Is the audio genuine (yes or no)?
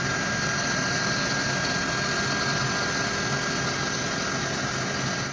yes